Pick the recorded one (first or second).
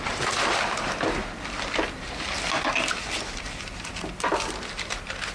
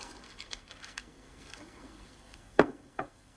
first